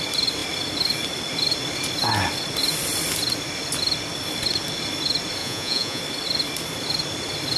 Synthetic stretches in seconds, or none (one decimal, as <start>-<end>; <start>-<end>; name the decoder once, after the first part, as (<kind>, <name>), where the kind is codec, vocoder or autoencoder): 5.4-6.0 (vocoder, Vocos)